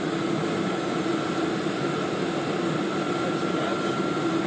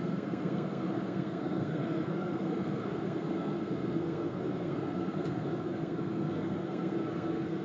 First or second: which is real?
first